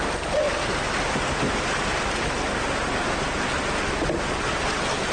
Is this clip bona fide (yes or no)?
yes